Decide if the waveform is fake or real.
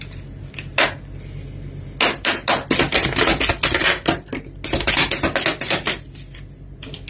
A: real